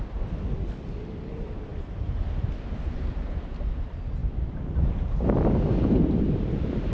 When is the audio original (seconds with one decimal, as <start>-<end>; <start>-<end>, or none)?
0.0-6.9